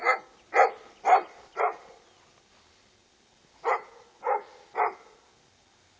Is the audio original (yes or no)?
yes